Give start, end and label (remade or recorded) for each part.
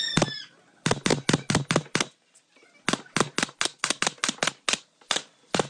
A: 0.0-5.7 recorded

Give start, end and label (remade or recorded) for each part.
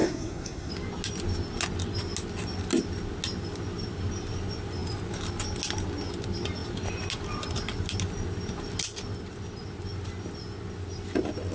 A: 0.0-0.7 remade; 0.7-11.5 recorded